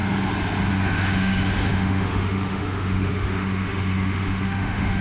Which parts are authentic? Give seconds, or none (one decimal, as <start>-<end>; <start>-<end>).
0.0-0.7